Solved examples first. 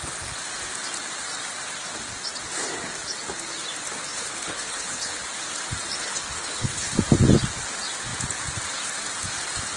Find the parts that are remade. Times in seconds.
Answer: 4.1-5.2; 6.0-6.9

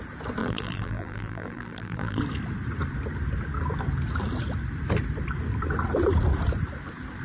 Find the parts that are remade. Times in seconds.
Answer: 0.4-2.2